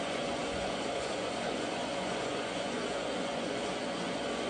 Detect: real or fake fake